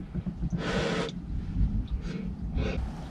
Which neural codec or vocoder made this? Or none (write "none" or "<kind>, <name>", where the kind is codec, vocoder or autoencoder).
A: none